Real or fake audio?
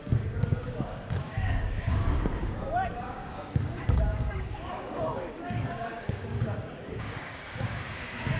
fake